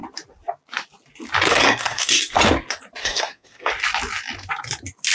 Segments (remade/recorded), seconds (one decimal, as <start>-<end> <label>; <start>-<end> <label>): 0.0-1.5 recorded; 1.5-2.4 remade; 2.4-3.0 recorded; 3.0-3.7 remade; 3.7-5.1 recorded